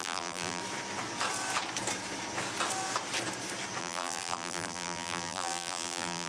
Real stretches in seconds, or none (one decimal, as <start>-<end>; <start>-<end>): 0.6-3.8

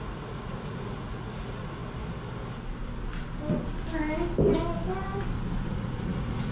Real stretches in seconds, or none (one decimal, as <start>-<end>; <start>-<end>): 1.8-5.7

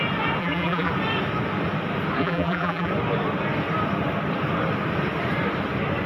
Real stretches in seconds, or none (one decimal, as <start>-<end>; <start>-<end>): 0.0-0.4; 0.9-2.2; 2.9-6.1

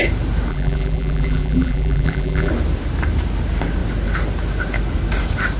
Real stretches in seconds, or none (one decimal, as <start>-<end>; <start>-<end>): 0.0-0.5; 2.5-5.6

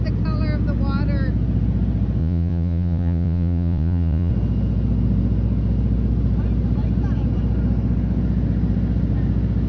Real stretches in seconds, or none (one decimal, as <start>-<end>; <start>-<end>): 0.0-2.2; 4.3-9.7

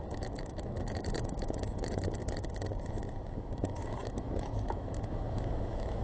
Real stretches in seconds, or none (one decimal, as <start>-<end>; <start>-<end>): 2.2-3.3

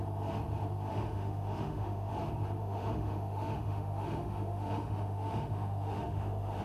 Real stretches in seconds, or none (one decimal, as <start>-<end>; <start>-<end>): 0.0-0.9; 2.1-2.6

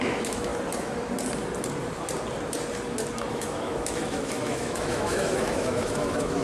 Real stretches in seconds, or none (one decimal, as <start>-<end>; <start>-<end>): 0.5-3.3